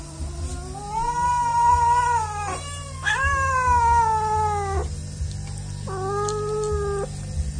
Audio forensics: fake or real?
real